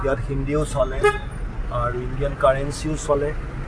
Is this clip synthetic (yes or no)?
no